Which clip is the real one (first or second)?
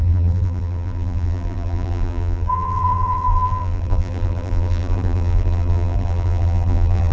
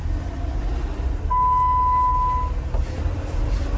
second